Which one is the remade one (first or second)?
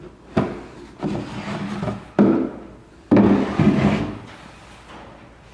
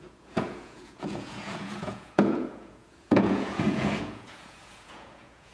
second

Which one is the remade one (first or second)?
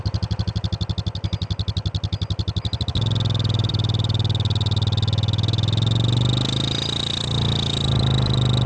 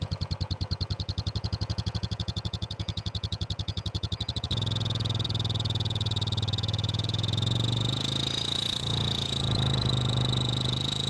second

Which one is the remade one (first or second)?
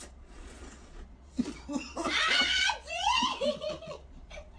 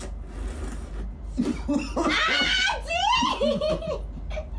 first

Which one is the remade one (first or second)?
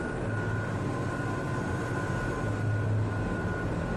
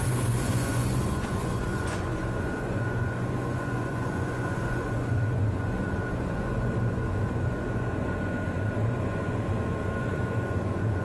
second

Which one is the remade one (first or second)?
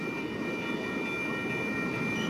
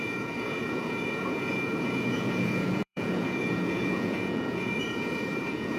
second